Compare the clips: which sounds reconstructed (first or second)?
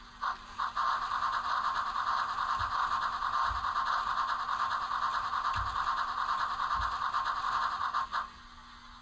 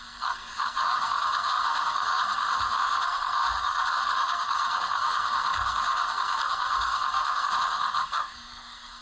second